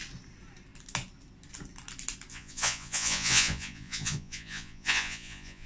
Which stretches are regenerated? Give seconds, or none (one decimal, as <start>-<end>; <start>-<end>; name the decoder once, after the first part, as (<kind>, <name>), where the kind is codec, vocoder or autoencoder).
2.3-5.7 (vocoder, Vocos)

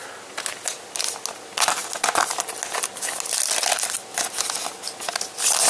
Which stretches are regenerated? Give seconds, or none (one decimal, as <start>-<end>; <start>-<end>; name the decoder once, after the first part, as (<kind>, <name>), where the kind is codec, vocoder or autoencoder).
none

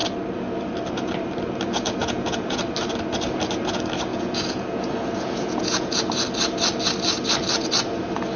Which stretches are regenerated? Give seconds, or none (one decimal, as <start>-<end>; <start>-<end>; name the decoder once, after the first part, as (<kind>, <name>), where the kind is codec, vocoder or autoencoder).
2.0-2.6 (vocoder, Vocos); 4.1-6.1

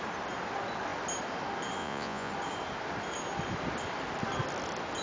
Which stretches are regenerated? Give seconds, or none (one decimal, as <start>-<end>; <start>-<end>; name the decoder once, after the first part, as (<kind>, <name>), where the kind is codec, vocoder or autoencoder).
1.8-2.3 (vocoder, Vocos)

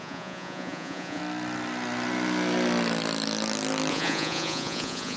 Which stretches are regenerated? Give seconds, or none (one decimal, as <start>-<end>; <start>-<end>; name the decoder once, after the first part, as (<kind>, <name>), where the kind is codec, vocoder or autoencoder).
0.0-1.2 (vocoder, Vocos); 3.9-5.2